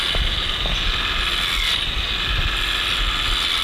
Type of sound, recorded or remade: recorded